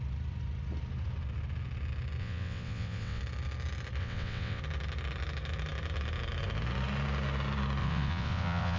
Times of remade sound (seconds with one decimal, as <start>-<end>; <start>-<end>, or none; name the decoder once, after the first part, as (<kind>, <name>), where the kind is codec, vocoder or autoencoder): 2.2-3.2 (vocoder, WaveNeXt); 4.0-4.6; 7.8-8.8